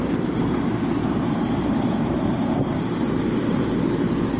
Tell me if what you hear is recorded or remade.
remade